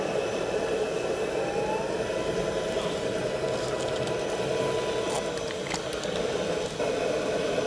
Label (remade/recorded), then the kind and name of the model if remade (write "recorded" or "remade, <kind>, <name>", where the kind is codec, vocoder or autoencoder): recorded